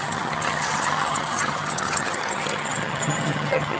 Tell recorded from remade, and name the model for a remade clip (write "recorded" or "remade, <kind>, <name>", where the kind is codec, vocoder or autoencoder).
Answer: remade, vocoder, HiFi-GAN